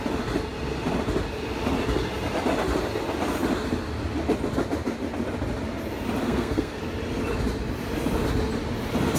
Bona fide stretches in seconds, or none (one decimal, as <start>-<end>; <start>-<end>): 0.0-6.2; 6.8-9.2